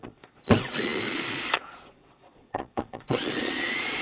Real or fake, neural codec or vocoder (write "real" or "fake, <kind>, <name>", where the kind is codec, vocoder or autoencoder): fake, vocoder, Vocos